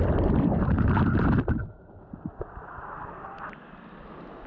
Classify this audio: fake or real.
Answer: real